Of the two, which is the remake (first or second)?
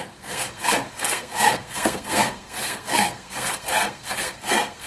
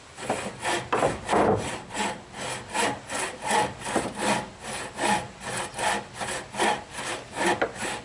first